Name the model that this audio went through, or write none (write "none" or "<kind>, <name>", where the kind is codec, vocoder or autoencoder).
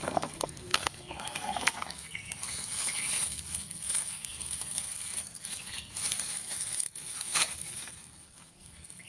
codec, SNAC